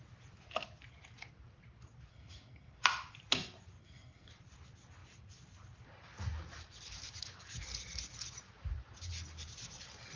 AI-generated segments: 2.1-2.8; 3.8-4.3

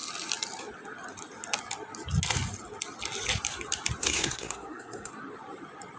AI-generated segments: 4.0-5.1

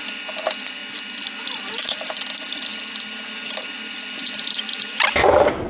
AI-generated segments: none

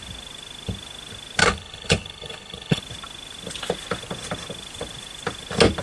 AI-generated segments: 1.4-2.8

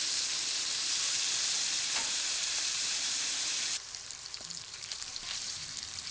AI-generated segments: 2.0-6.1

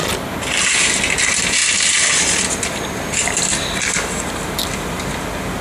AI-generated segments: 1.6-5.0

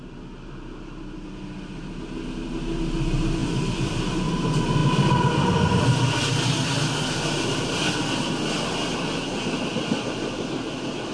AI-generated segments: 3.4-4.3